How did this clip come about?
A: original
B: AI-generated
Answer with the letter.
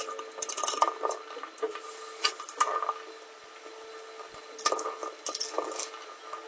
A